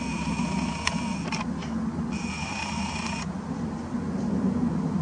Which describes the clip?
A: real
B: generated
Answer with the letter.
A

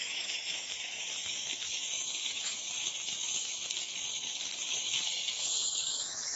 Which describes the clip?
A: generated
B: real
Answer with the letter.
A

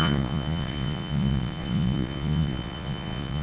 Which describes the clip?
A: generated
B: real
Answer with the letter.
A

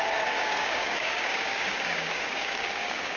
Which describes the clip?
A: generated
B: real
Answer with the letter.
A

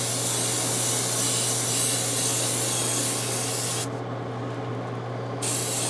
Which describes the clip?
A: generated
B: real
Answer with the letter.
B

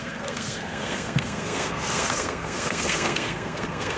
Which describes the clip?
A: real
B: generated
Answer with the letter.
B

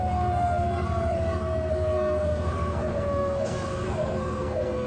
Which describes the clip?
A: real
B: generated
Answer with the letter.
B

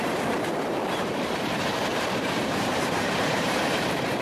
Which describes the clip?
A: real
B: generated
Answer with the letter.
B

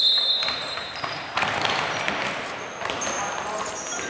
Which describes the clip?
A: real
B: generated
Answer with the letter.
A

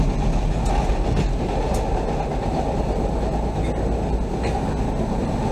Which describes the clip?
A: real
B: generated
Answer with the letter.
A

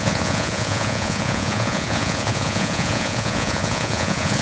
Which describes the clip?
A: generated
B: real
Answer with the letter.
A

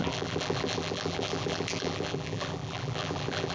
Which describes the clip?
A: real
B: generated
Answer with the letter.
B